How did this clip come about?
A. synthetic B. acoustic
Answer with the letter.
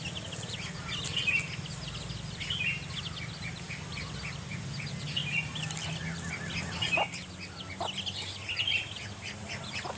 B